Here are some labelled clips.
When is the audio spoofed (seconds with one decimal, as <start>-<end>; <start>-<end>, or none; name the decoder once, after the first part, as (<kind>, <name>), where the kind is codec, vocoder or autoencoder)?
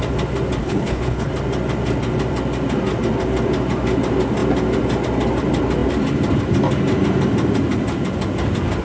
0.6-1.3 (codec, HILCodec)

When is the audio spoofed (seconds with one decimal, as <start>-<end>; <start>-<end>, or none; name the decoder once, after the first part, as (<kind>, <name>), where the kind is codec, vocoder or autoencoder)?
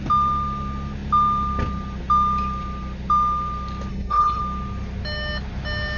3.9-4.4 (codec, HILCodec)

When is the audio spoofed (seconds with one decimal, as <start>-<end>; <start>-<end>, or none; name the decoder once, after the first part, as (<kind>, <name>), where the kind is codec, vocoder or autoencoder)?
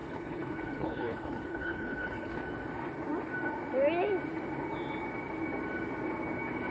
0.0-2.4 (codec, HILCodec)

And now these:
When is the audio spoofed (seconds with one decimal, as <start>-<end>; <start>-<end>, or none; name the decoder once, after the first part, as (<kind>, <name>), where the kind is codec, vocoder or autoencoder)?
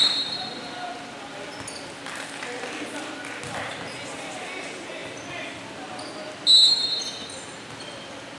none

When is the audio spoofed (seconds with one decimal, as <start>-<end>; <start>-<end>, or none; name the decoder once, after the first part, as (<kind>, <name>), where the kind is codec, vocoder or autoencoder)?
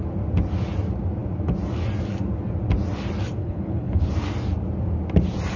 3.4-4.1 (codec, HILCodec)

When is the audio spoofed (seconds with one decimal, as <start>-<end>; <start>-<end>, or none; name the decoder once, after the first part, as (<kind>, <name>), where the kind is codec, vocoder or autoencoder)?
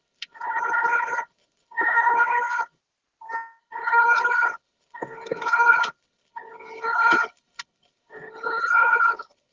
0.0-2.8 (codec, HILCodec); 3.6-9.5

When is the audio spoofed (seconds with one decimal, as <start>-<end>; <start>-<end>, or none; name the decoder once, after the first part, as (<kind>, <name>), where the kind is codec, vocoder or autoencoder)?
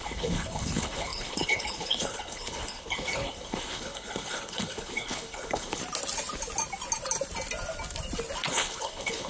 0.0-5.8 (codec, HILCodec); 8.5-9.3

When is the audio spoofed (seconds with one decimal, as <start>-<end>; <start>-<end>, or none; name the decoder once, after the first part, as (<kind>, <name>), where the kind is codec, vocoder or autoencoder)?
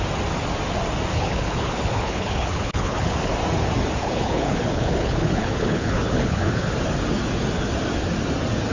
1.1-3.3 (codec, HILCodec); 4.0-6.7